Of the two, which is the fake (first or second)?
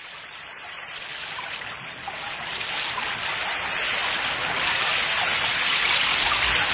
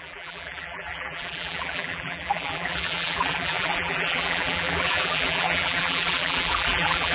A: second